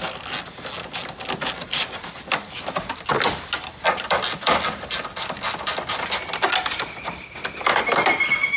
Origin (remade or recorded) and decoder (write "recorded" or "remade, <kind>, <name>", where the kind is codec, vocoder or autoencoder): recorded